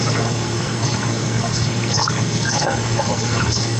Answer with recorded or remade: remade